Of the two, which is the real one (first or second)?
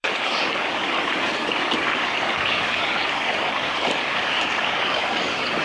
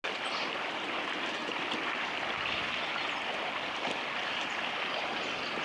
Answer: second